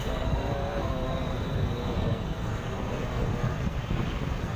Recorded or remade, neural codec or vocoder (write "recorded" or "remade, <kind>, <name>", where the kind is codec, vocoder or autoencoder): remade, codec, SNAC